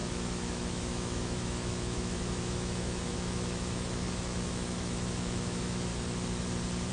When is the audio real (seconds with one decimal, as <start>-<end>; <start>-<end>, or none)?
5.9-6.9